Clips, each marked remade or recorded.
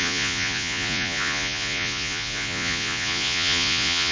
remade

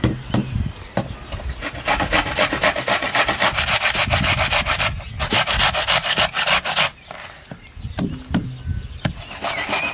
recorded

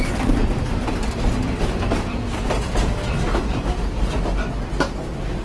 recorded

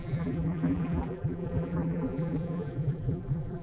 remade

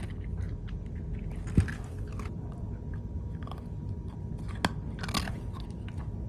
recorded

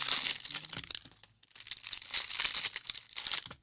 recorded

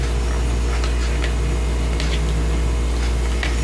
recorded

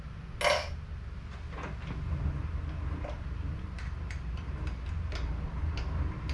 recorded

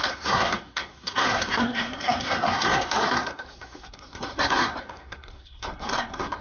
remade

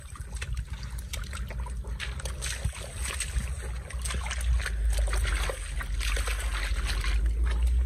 recorded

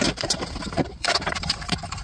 remade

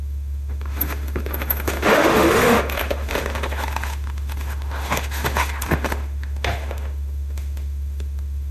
remade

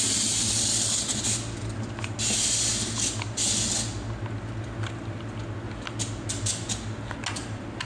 recorded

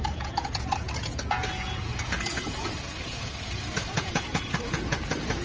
remade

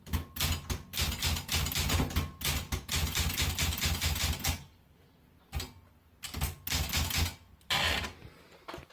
recorded